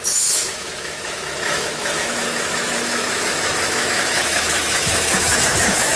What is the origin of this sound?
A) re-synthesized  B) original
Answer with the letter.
A